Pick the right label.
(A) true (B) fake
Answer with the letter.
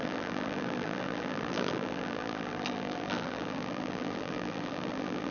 B